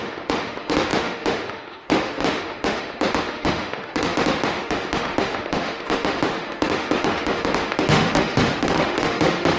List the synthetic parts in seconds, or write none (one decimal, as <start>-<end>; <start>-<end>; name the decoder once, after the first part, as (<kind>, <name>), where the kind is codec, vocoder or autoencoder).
0.0-9.6 (autoencoder, DAC-VAE)